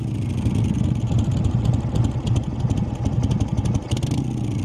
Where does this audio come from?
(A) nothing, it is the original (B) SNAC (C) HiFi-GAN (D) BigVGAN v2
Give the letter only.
A